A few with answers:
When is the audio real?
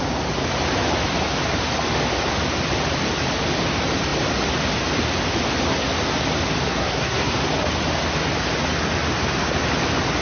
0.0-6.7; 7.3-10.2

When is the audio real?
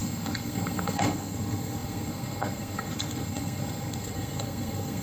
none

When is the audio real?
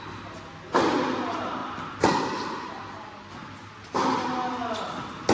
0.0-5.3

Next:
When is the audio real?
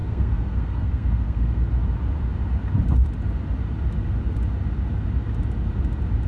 1.7-6.3